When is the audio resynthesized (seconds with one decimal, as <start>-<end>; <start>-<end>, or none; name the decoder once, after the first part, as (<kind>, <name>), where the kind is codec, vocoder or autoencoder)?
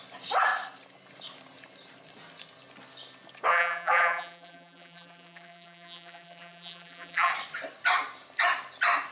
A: 3.5-7.3 (vocoder, BigVGAN v2)